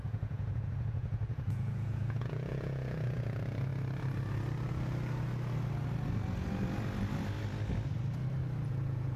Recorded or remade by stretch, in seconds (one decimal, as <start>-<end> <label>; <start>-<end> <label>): 0.0-3.7 remade; 3.7-8.7 recorded; 8.7-9.2 remade

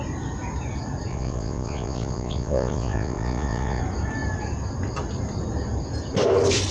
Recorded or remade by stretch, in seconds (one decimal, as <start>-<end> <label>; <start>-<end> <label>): 0.0-1.1 recorded; 1.1-3.8 remade; 3.8-6.7 recorded

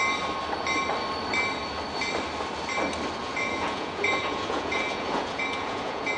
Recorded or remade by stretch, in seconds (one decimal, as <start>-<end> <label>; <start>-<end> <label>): 0.0-3.2 recorded; 3.2-6.2 remade

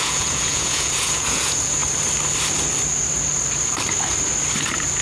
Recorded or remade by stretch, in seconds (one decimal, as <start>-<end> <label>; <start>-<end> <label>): 0.0-1.8 remade; 1.8-5.0 recorded

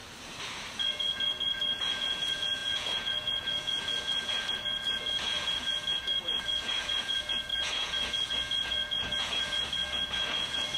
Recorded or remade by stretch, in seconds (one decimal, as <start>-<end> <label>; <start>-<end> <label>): 0.0-0.7 recorded; 0.7-10.8 remade